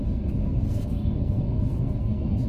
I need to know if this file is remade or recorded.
remade